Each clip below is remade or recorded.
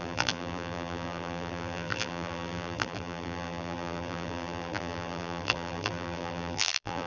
remade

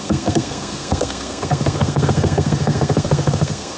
remade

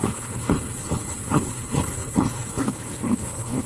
remade